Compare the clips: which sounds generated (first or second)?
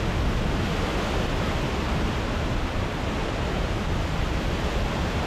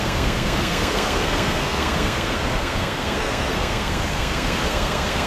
second